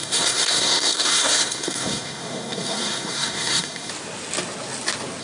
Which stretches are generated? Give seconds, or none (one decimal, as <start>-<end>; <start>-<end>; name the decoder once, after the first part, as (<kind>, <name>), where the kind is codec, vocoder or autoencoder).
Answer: 0.0-3.9 (codec, SNAC)